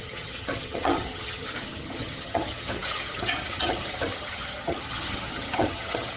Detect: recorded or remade remade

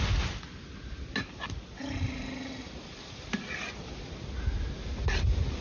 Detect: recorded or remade recorded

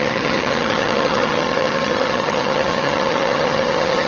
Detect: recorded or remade remade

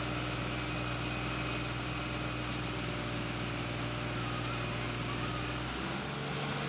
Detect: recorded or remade recorded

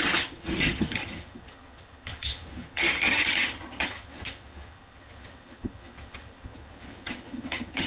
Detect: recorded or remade remade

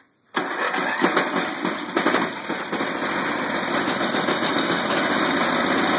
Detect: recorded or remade recorded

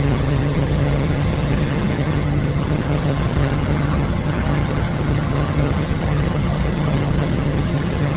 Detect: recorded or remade remade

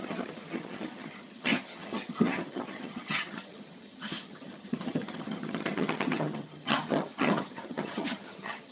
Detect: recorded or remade remade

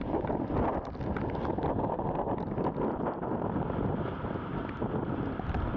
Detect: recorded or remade recorded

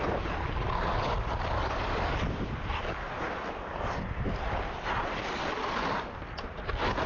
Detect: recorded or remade recorded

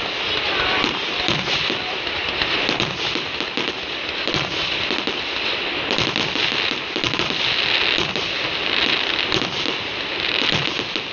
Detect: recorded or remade recorded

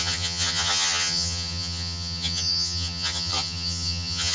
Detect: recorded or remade remade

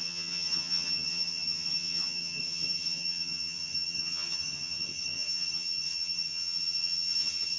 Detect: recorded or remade remade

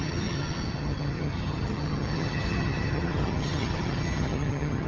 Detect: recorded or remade remade